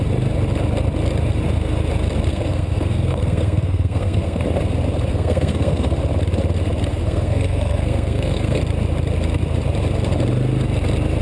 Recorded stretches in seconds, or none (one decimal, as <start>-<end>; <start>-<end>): 0.0-2.3; 4.4-5.1; 5.9-6.9; 8.6-11.2